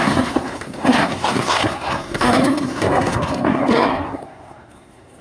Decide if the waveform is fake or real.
fake